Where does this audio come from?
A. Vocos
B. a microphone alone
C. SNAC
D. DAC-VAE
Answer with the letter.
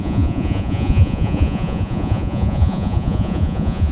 A